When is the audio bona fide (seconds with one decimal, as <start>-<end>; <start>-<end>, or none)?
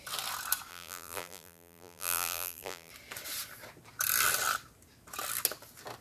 0.0-0.7; 2.9-6.0